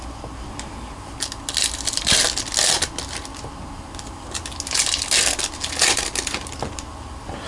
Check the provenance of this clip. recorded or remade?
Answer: recorded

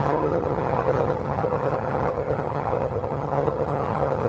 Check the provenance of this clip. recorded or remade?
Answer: remade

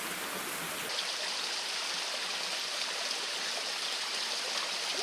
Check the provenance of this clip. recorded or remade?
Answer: recorded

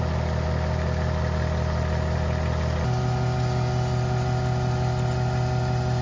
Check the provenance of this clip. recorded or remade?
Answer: recorded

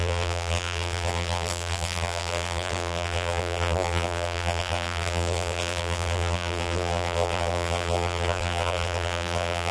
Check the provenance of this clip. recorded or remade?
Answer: remade